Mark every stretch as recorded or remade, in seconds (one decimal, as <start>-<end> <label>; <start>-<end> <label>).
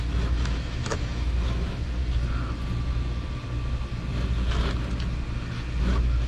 0.0-2.0 remade; 2.0-5.8 recorded; 5.8-6.3 remade